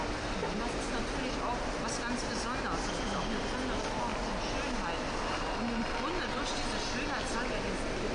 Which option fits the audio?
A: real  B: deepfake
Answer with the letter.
A